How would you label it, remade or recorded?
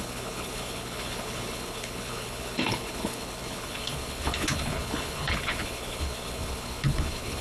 remade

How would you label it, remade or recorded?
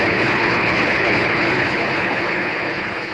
remade